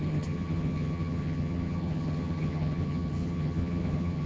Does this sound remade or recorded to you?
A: remade